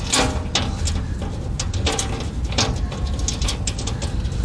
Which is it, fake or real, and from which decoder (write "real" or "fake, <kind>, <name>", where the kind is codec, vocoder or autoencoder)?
real